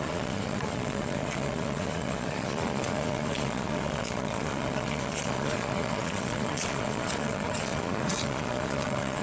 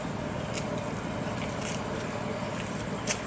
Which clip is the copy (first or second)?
first